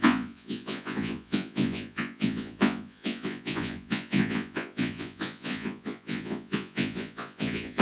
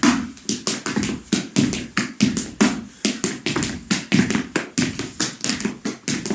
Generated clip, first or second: first